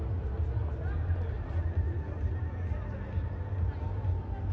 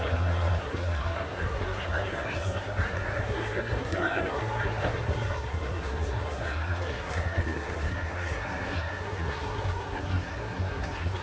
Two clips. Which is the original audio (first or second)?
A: first